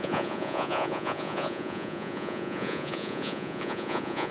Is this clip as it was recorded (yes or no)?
no